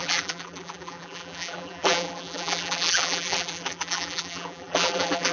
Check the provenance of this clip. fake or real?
fake